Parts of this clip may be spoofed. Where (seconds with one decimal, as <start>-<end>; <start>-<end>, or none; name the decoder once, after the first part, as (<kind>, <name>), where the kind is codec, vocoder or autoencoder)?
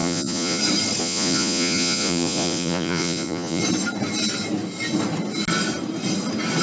0.0-0.6 (vocoder, Vocos); 1.0-3.6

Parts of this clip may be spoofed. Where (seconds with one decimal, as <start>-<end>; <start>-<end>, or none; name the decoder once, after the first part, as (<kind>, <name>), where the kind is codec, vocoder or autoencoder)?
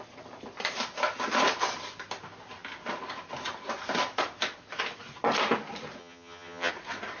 6.0-6.7 (vocoder, HiFi-GAN)